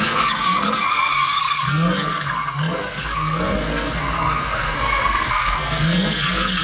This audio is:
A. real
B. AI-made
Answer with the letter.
B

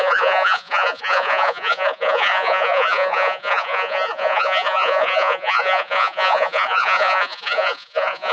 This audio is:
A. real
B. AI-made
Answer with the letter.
B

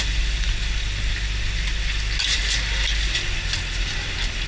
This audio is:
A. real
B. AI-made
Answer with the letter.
A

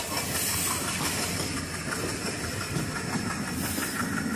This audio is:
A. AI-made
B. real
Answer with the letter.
B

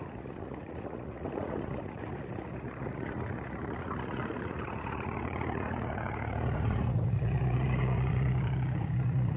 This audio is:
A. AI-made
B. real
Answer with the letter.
A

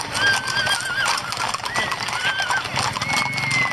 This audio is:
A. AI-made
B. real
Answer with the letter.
B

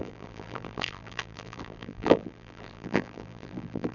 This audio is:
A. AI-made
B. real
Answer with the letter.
A